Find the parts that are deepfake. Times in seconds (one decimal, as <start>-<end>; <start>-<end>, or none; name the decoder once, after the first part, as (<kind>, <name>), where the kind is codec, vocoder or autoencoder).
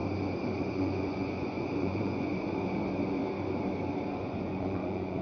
0.7-2.3 (vocoder, Vocos); 4.1-5.2